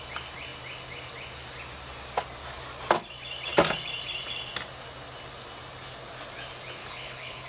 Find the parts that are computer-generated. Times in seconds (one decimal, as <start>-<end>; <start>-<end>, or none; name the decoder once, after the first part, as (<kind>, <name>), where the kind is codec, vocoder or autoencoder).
6.8-7.5 (codec, HILCodec)